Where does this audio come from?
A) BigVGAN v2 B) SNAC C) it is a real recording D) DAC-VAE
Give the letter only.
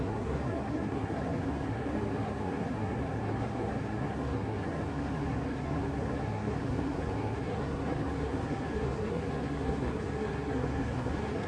B